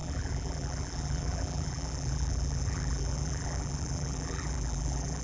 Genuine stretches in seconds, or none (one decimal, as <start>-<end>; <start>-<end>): none